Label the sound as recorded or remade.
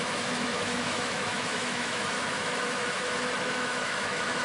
remade